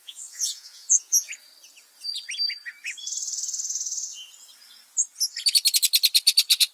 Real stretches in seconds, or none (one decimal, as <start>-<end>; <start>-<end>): 1.3-6.7